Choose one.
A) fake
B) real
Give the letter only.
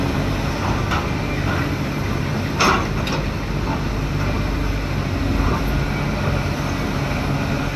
B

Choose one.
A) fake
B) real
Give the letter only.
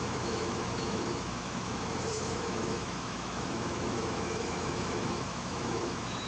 A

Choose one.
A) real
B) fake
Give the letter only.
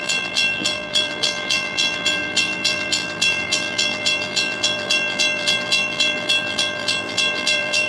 B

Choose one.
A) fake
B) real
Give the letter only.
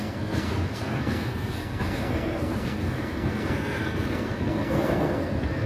A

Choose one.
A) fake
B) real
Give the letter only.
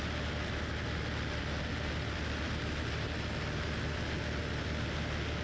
B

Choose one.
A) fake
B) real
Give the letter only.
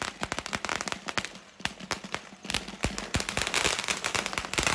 B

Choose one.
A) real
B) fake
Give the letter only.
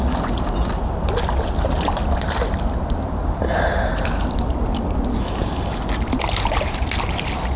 A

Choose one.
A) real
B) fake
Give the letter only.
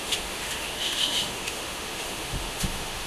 B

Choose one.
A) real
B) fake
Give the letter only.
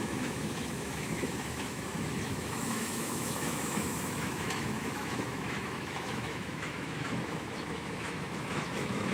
B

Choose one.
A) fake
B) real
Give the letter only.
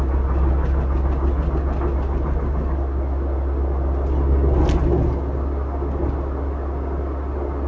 B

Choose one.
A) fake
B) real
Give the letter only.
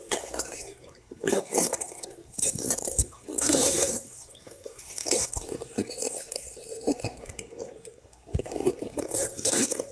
A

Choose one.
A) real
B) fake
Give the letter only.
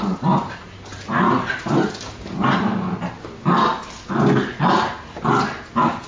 A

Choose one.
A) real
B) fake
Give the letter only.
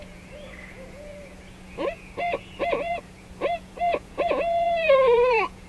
B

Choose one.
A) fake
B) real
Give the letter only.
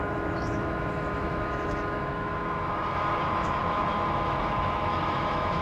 A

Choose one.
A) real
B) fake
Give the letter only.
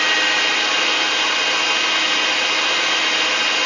A